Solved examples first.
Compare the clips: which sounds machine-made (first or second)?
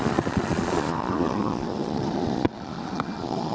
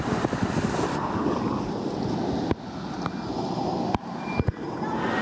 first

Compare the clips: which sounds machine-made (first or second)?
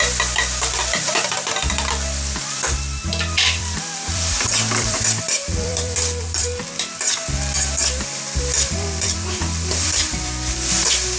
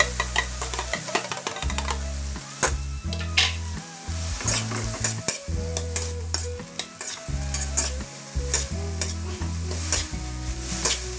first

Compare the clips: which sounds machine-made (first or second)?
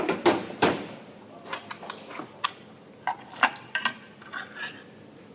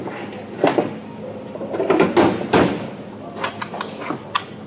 first